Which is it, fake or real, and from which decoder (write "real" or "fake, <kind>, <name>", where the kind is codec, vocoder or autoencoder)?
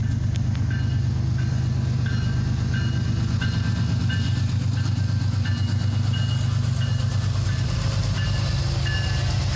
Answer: real